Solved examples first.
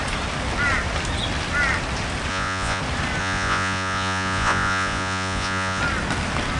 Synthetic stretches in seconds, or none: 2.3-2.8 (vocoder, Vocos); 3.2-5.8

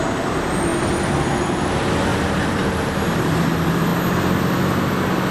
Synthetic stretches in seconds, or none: 2.1-3.4 (vocoder, BigVGAN v2)

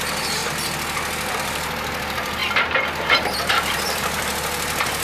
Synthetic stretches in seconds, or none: 0.0-0.4 (vocoder, BigVGAN v2); 1.3-2.4; 3.0-5.0

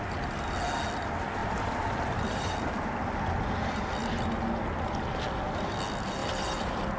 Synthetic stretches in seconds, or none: 1.4-2.7 (vocoder, BigVGAN v2); 6.2-7.0

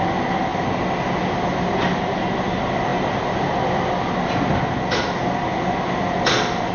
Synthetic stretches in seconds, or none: none